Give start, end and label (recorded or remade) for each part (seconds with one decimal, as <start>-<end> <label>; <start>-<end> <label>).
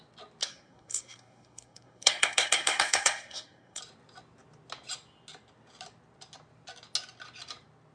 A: 0.0-0.4 recorded; 0.4-3.8 remade; 3.8-7.9 recorded